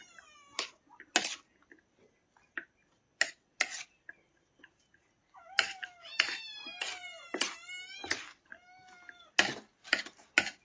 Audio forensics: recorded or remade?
recorded